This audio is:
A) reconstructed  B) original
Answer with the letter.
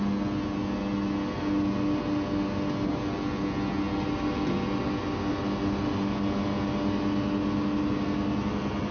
B